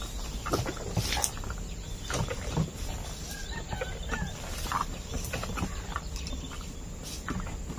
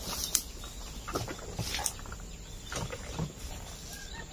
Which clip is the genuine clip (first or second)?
second